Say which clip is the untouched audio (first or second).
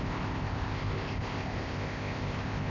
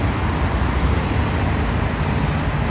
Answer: second